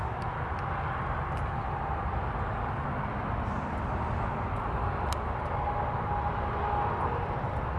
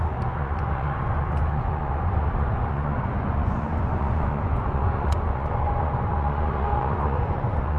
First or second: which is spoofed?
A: second